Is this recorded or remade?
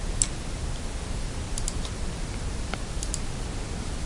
recorded